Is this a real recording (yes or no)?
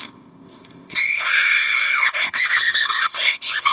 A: no